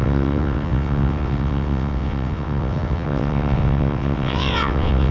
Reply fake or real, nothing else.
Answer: fake